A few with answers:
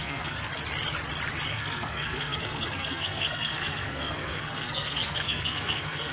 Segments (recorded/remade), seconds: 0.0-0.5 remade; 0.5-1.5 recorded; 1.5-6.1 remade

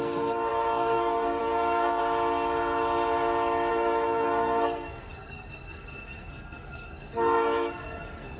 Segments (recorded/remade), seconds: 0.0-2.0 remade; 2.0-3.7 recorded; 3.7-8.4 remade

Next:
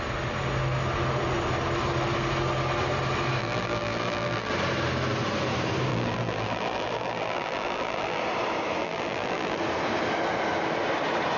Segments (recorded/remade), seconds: 0.0-3.4 recorded; 3.4-4.5 remade; 4.5-5.9 recorded; 5.9-8.2 remade; 8.2-8.8 recorded; 8.8-9.6 remade; 9.6-11.4 recorded